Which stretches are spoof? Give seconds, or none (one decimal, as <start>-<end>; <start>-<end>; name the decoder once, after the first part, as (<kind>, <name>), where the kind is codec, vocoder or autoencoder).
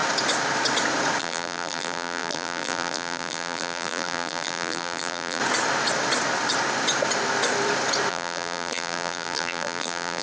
1.2-5.4 (vocoder, BigVGAN v2); 8.1-10.2